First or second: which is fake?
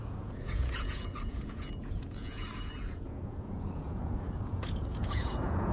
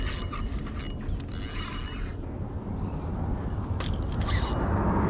first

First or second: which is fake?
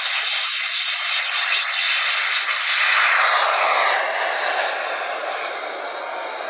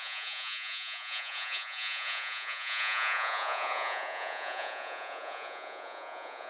second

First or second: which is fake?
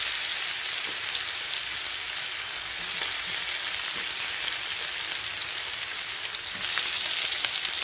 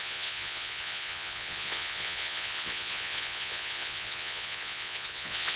second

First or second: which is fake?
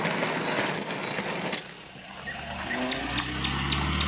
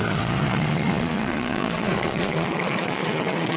second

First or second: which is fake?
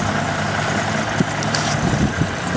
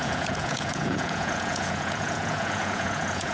second